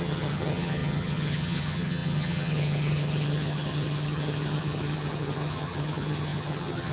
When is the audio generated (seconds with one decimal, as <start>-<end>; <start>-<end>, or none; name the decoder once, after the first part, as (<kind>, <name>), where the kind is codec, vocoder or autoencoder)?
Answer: 0.0-6.9 (vocoder, HiFi-GAN)